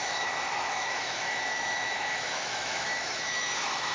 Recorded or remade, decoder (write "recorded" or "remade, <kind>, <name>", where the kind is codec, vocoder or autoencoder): remade, autoencoder, DAC-VAE